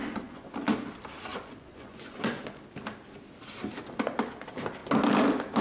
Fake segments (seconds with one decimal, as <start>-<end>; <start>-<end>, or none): 0.0-0.5; 1.3-2.6